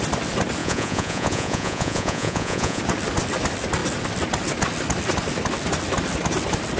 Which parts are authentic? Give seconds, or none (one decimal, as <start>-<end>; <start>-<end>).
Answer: 0.0-0.6; 2.8-6.8

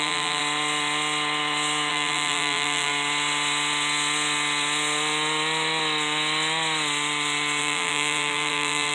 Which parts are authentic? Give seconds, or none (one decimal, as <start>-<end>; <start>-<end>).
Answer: 0.4-1.9; 2.9-7.6

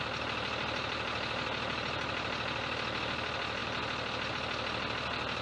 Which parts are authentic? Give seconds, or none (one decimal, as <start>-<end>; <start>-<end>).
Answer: 0.0-5.4

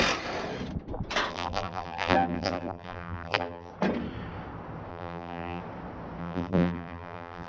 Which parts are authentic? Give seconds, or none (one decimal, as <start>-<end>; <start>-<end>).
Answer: 0.0-1.3; 3.7-4.9; 5.6-6.2